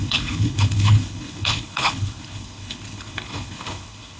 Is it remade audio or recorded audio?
remade